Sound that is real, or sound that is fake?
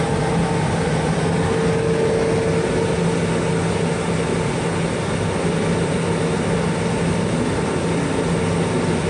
real